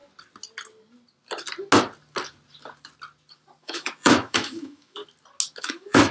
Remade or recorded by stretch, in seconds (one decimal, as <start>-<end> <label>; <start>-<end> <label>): 0.0-3.6 recorded; 3.6-5.0 remade; 5.0-5.6 recorded; 5.6-6.1 remade